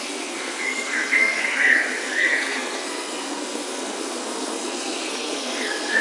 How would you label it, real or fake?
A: fake